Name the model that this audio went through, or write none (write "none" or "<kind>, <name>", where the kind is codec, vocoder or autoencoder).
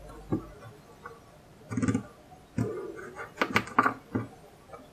none